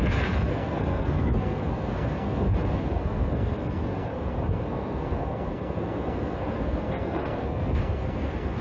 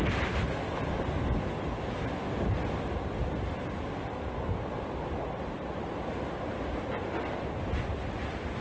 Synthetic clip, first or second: first